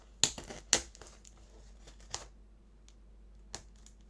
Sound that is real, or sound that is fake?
real